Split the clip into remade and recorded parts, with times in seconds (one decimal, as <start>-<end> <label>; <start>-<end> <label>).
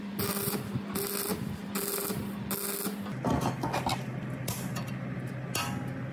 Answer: 0.0-6.1 recorded